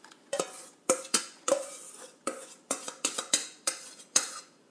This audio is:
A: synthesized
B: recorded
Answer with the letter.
A